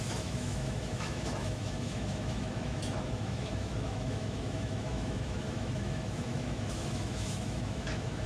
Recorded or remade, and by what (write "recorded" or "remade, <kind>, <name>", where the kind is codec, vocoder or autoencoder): remade, autoencoder, DAC-VAE